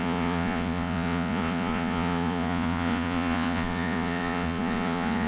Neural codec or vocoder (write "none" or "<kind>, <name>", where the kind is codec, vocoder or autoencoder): vocoder, Vocos